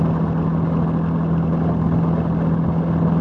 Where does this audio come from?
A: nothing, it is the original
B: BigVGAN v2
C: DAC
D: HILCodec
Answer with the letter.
A